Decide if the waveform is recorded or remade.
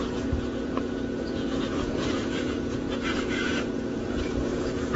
remade